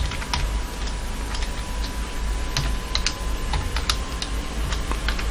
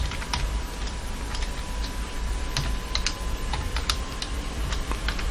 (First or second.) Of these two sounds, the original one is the first